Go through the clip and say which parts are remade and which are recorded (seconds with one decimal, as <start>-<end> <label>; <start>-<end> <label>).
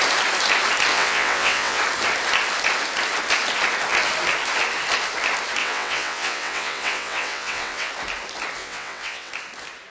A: 0.0-0.9 recorded; 0.9-1.8 remade; 1.8-5.6 recorded; 5.6-7.9 remade; 7.9-8.6 recorded; 8.6-9.3 remade; 9.3-9.9 recorded